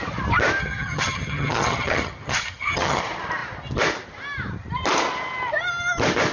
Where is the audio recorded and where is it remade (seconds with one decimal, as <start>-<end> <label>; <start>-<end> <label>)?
0.0-0.6 recorded; 0.6-3.0 remade; 3.0-6.3 recorded